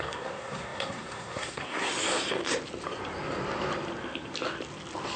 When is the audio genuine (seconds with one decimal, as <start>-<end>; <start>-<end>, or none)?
1.9-5.2